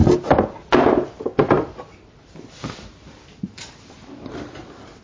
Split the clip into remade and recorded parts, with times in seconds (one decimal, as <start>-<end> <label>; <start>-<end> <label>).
0.0-5.0 recorded